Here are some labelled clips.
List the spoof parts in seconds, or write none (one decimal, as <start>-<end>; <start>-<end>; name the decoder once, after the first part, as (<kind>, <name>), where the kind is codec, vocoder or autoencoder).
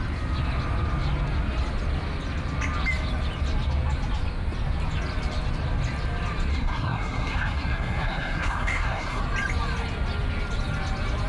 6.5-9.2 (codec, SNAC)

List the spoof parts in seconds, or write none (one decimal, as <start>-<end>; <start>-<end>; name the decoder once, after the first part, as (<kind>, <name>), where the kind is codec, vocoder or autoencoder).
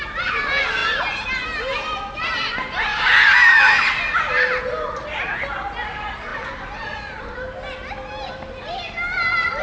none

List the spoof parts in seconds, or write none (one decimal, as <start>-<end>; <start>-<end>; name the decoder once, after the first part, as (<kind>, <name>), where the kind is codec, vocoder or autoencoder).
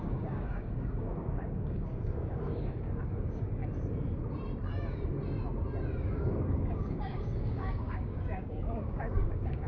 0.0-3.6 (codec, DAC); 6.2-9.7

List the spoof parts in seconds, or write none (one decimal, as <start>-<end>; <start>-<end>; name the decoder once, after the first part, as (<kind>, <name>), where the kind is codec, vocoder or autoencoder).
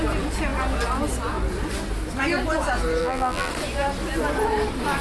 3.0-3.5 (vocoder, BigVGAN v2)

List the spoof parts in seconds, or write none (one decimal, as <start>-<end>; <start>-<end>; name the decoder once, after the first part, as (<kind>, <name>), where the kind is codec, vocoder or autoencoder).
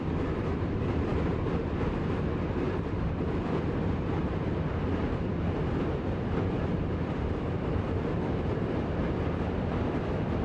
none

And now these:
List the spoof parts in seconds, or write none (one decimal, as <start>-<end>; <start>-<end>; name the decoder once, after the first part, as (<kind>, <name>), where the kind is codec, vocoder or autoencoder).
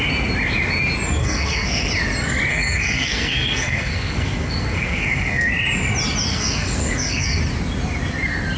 1.2-1.9 (codec, SNAC); 2.5-5.5; 6.3-7.4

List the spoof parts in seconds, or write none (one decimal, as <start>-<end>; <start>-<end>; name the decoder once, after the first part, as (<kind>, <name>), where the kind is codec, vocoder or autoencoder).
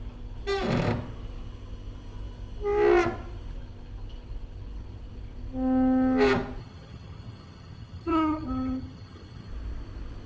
6.6-9.5 (vocoder, HiFi-GAN)